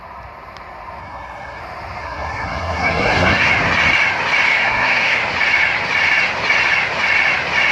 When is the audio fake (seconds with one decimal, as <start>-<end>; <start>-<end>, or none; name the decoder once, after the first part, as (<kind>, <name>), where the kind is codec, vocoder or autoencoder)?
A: 1.0-1.6 (codec, SNAC); 2.0-3.5; 4.5-5.2